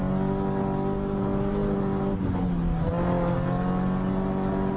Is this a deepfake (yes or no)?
no